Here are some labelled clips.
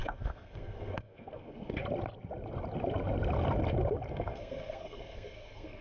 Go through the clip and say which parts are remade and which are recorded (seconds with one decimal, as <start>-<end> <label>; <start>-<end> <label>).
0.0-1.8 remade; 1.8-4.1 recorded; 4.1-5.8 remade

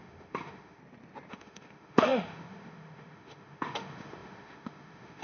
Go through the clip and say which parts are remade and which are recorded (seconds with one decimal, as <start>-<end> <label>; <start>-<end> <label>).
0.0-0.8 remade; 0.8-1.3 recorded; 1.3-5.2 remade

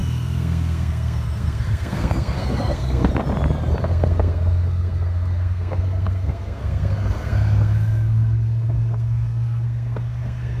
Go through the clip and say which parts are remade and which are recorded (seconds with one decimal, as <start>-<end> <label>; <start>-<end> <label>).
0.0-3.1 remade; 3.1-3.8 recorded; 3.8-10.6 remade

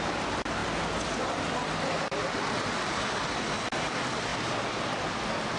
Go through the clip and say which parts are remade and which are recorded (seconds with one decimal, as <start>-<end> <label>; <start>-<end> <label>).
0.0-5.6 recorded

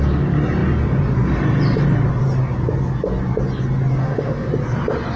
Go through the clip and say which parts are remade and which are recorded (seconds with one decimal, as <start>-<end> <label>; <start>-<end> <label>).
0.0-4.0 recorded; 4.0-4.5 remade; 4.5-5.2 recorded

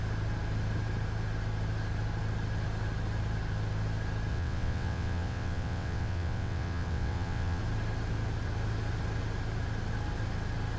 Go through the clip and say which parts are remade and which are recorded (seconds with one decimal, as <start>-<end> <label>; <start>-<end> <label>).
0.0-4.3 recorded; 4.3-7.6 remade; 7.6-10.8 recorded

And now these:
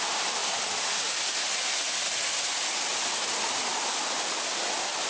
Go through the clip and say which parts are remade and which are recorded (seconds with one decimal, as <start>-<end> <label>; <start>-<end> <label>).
0.0-5.1 recorded

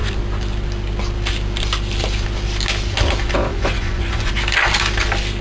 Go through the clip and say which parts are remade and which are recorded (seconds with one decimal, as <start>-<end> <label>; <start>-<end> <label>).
0.0-3.5 recorded; 3.5-4.3 remade; 4.3-5.4 recorded